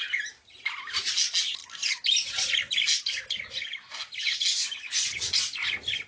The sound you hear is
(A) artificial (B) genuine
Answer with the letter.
B